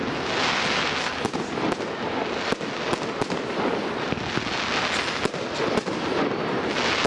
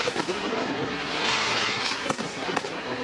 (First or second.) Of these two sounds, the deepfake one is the second